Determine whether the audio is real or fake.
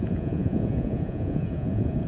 fake